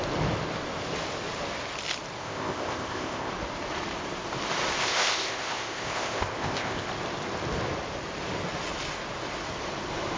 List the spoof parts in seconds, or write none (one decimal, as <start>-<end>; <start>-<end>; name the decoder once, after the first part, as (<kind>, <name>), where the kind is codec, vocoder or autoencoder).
2.2-3.3 (codec, ZipCodec); 4.8-6.9